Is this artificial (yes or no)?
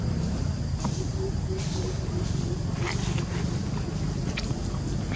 no